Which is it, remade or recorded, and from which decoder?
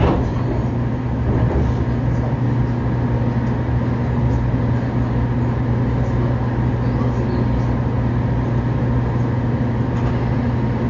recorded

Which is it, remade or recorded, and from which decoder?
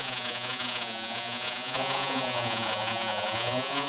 remade, vocoder, Vocos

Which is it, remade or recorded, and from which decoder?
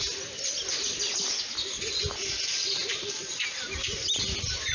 recorded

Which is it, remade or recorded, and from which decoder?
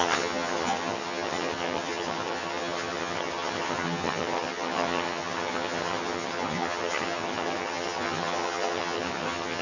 remade, vocoder, HiFi-GAN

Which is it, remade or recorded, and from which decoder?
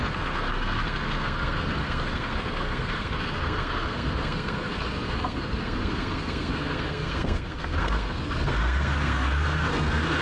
remade, codec, SNAC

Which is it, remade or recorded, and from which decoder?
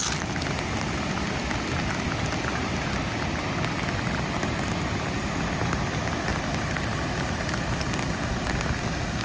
recorded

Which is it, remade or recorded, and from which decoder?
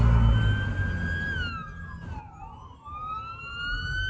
recorded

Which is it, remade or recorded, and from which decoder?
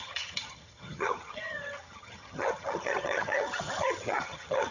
remade, vocoder, HiFi-GAN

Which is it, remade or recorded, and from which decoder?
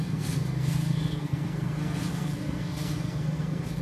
remade, codec, SNAC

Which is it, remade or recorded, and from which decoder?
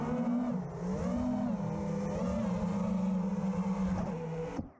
recorded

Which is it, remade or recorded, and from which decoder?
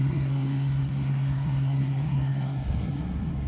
remade, codec, SNAC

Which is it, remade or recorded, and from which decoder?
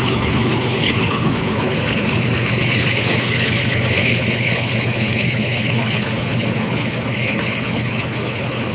remade, codec, HILCodec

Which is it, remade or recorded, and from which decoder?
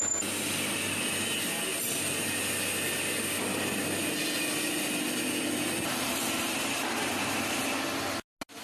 recorded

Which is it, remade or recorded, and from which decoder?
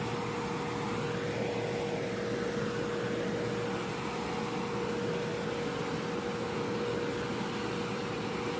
recorded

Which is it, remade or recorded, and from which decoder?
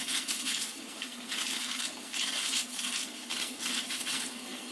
remade, codec, SNAC